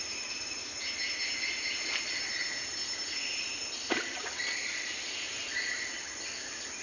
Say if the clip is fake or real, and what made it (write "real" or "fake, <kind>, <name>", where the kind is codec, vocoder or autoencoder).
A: real